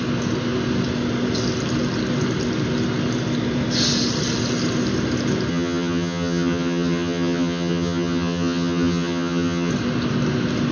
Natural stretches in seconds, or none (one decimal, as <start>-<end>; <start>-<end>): 0.0-5.5; 9.7-10.7